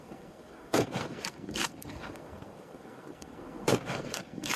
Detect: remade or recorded remade